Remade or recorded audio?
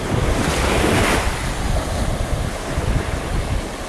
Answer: recorded